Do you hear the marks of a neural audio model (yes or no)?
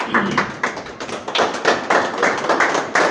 yes